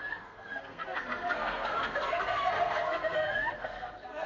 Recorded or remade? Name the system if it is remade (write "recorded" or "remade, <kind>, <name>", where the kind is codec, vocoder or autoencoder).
remade, codec, SNAC